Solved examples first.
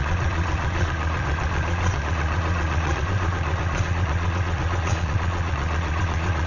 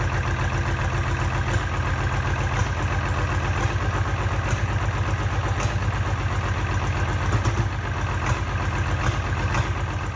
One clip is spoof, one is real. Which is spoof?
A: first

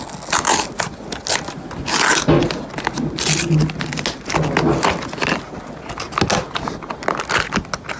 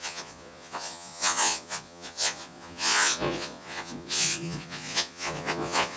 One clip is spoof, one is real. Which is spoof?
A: second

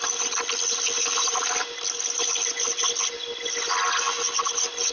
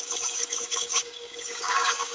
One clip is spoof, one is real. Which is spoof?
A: second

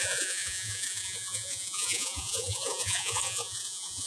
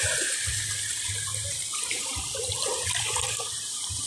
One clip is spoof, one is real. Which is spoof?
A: first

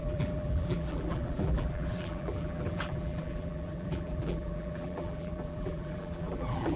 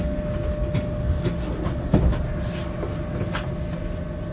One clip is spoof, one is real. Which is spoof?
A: first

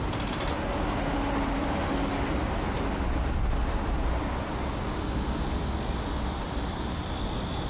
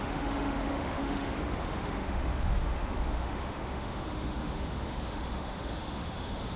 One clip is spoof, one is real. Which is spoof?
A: second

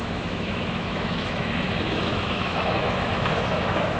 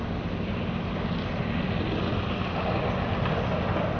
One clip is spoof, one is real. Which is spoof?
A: first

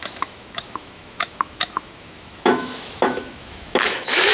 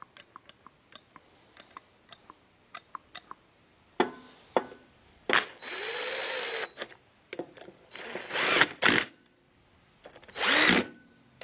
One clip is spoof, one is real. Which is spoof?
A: first